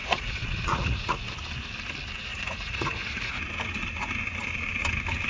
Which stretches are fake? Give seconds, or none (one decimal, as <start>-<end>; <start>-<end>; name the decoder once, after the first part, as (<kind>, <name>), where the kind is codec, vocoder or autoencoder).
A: 0.0-1.3 (vocoder, Vocos); 2.3-3.4